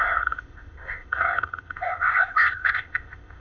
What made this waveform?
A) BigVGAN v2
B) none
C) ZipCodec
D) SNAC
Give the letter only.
C